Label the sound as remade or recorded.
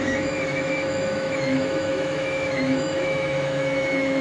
remade